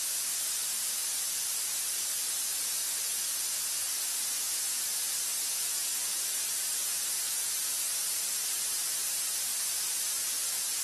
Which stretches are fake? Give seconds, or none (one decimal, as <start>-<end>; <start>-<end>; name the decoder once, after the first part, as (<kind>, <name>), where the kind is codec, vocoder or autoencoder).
0.0-2.8 (vocoder, BigVGAN v2); 5.6-7.4; 8.5-10.8